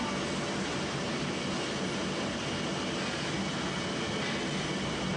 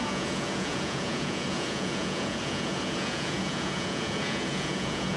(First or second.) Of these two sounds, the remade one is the second